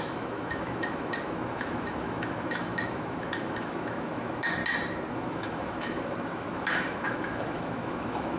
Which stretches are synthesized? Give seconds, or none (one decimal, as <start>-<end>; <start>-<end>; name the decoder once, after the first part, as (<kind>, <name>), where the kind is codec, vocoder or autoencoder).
0.0-4.6 (autoencoder, DAC-VAE); 5.1-8.4